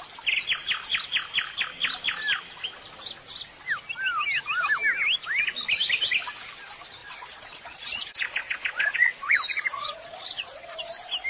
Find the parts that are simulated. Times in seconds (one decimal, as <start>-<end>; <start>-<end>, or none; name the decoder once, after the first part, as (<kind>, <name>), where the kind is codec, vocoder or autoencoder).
7.0-10.8 (vocoder, Vocos)